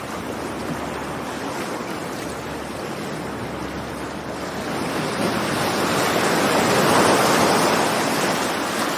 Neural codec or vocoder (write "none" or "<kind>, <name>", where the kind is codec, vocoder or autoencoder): none